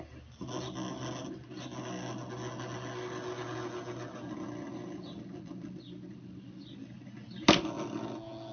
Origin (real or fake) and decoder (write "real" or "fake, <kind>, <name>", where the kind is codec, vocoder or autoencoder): real